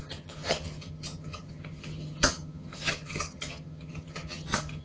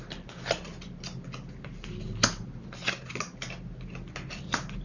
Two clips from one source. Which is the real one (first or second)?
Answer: second